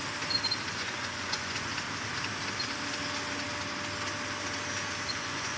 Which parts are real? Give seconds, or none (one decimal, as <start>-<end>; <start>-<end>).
0.0-0.7; 1.7-5.1

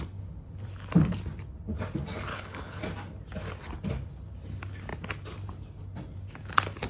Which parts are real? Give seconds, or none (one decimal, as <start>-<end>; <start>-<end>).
0.0-2.3; 2.8-6.9

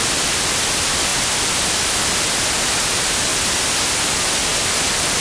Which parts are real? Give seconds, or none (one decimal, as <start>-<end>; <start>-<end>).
0.0-5.2

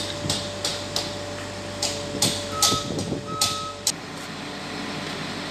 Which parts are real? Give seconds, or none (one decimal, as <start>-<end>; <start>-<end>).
0.0-5.5

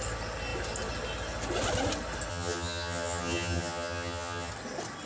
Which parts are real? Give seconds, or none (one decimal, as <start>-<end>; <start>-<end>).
0.0-2.3; 4.5-5.0

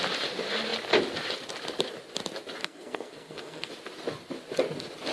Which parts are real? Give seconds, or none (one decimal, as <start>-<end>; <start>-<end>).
0.0-2.6; 3.7-5.1

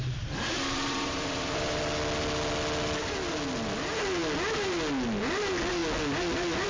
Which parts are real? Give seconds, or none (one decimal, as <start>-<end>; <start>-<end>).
1.8-6.7